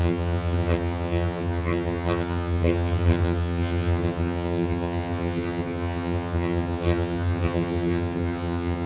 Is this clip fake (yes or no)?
yes